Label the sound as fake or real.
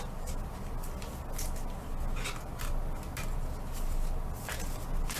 real